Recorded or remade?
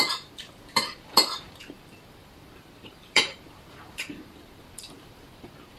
remade